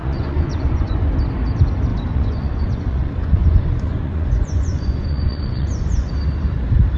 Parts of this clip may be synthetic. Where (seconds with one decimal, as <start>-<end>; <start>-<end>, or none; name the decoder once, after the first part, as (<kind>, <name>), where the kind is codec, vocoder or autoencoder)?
0.0-1.1 (vocoder, Vocos); 1.9-6.1

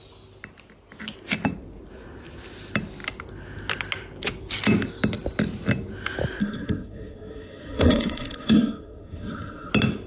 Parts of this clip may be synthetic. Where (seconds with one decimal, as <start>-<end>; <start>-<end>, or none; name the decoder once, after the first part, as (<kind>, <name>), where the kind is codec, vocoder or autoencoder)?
6.4-9.7 (codec, SNAC)

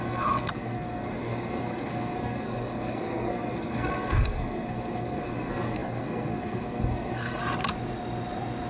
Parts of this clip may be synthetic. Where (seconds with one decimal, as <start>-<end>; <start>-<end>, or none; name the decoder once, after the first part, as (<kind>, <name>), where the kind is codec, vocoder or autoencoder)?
0.0-7.4 (codec, SNAC)

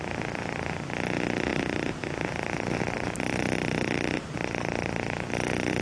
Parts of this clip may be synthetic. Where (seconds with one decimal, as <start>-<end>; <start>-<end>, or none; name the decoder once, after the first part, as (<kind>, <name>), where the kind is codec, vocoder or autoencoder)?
none